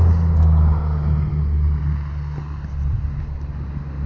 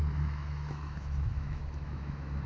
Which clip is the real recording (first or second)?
first